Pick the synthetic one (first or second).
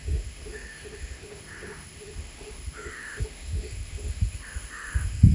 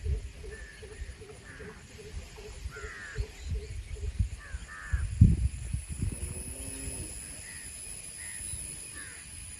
first